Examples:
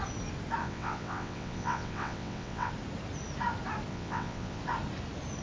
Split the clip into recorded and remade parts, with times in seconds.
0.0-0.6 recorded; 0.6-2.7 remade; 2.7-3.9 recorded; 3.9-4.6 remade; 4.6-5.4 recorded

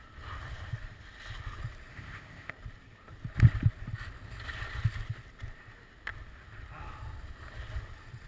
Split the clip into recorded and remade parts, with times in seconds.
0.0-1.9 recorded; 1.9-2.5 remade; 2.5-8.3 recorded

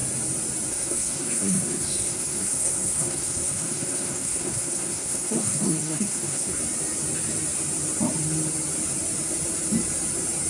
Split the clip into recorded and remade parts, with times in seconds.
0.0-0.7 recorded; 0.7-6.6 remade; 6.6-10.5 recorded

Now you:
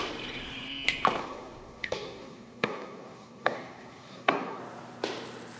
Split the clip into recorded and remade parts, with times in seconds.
0.0-1.2 recorded; 1.2-4.6 remade; 4.6-5.6 recorded

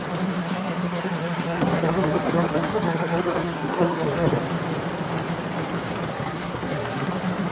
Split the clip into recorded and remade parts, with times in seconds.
0.0-0.4 recorded; 0.4-4.3 remade; 4.3-6.1 recorded; 6.1-7.1 remade; 7.1-7.5 recorded

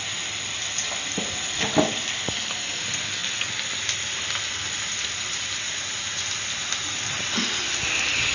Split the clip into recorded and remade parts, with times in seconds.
0.0-8.3 recorded

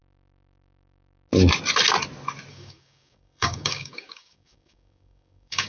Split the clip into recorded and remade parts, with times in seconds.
0.0-2.5 recorded; 2.5-5.7 remade